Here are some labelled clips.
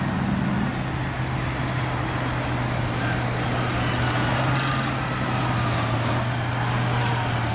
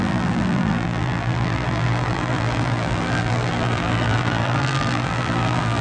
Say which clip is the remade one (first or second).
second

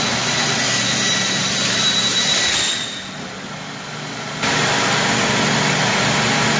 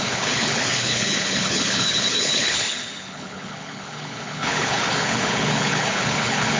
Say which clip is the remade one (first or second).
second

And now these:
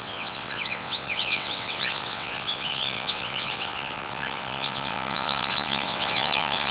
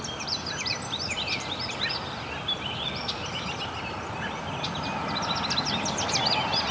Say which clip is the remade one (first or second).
first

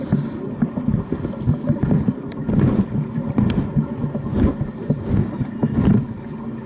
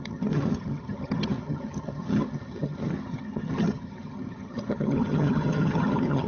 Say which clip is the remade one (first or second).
second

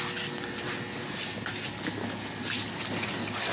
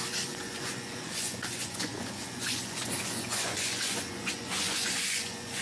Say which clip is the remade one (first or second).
second